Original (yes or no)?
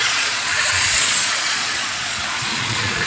no